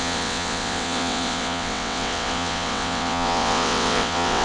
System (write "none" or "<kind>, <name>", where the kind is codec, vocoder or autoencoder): vocoder, WaveNeXt